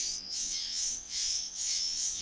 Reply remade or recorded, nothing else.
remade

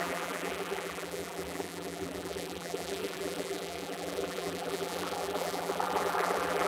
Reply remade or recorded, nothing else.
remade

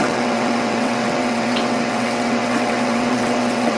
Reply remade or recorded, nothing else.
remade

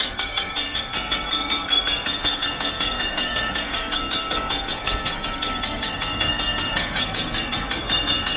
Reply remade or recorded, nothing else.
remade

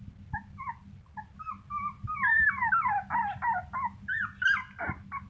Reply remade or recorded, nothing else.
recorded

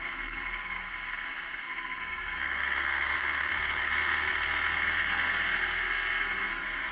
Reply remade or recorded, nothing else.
remade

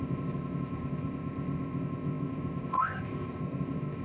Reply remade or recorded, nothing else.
remade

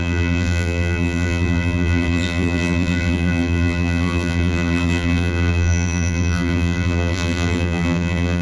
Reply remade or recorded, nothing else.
remade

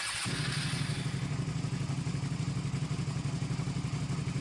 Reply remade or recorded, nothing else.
recorded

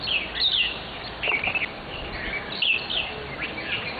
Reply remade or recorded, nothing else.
recorded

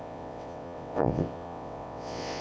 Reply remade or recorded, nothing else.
remade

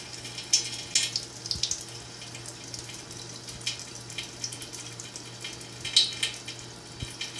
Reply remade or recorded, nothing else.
recorded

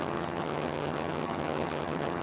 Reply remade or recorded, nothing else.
remade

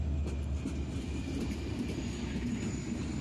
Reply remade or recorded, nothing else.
recorded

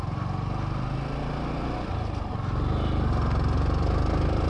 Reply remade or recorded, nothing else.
recorded